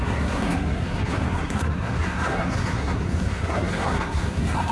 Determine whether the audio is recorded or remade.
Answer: remade